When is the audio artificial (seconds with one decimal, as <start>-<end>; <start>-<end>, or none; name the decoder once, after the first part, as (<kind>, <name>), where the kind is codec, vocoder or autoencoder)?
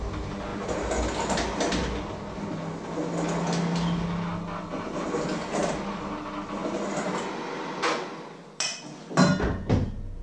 none